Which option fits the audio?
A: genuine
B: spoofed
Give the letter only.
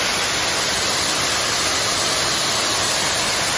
A